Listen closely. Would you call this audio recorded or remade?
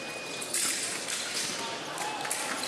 remade